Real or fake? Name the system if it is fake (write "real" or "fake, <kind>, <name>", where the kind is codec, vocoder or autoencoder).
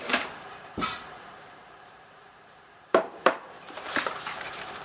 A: fake, vocoder, BigVGAN v2